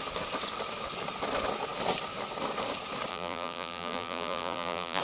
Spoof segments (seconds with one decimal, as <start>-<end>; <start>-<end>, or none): 3.1-5.0